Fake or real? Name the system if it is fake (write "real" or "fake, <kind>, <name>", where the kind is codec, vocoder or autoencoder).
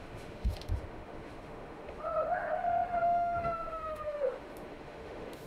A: fake, autoencoder, DAC-VAE